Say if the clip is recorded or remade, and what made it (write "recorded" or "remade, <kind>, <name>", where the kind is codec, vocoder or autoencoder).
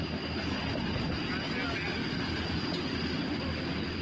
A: recorded